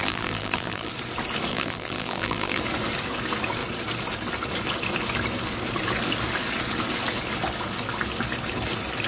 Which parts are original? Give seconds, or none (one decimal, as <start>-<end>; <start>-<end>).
0.9-1.5; 2.6-9.1